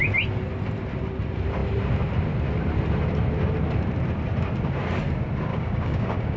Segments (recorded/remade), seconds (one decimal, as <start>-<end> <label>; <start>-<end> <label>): 0.0-5.5 recorded; 5.5-6.4 remade